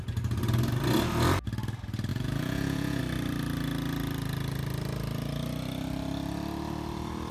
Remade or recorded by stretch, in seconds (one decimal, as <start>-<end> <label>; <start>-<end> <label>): 0.0-2.1 recorded; 2.1-3.0 remade; 3.0-7.3 recorded